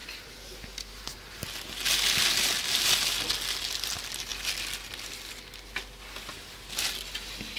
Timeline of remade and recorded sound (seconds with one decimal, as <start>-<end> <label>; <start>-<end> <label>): 0.0-7.6 recorded